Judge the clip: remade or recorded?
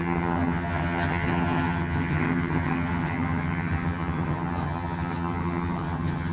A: remade